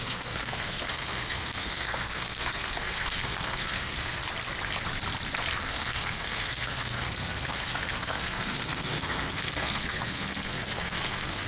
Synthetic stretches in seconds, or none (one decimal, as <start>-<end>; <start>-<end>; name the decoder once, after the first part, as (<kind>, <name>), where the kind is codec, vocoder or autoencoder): 0.0-4.2 (codec, SNAC); 5.6-11.5